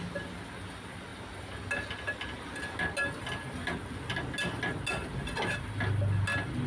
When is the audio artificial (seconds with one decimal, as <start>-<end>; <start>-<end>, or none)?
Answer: none